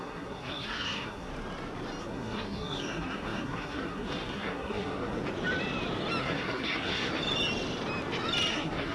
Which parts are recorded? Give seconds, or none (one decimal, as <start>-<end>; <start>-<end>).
1.3-2.0; 5.2-6.2; 7.1-8.5